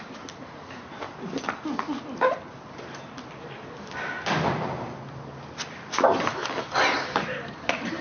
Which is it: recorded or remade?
recorded